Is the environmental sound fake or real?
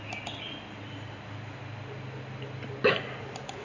real